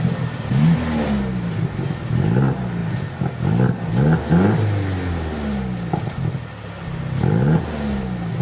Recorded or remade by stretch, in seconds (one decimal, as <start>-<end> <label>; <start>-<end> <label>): 0.0-8.4 recorded